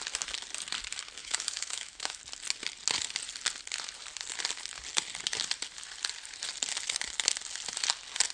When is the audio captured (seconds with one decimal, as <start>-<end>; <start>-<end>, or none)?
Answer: 0.0-1.2; 2.2-8.3